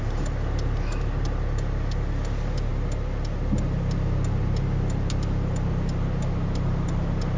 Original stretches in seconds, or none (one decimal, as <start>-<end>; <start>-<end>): 0.0-7.4